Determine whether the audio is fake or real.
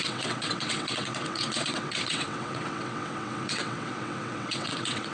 fake